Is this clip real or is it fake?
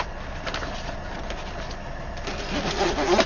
real